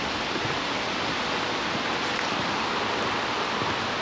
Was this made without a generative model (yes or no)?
yes